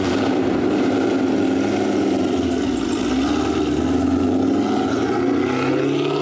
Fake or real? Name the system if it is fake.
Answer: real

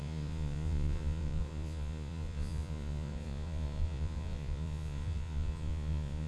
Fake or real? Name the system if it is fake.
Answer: fake, vocoder, Vocos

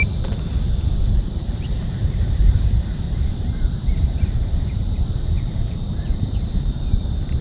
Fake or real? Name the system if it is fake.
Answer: fake, vocoder, BigVGAN v2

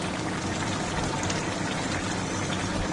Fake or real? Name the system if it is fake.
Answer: real